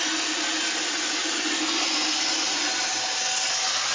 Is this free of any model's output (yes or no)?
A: yes